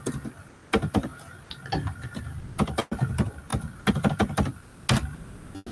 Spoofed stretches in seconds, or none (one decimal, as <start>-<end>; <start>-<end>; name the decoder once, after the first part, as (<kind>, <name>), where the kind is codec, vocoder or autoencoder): none